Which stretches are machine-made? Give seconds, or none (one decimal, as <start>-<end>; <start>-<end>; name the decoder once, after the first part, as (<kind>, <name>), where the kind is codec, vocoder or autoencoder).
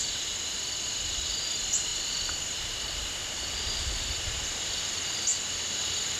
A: none